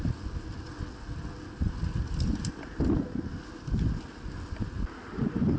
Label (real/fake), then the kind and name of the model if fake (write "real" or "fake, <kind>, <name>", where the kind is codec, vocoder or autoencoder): real